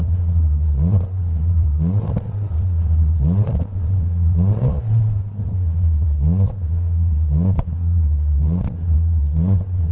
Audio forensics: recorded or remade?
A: remade